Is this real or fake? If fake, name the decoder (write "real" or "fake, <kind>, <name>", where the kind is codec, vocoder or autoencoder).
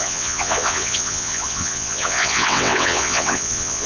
fake, vocoder, WaveNeXt